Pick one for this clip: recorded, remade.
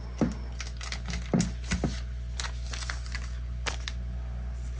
recorded